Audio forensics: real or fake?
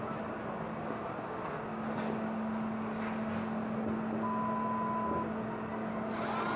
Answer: real